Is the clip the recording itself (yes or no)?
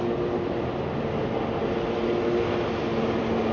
yes